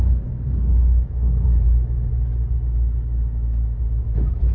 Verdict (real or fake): real